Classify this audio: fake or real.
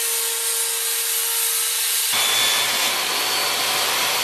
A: real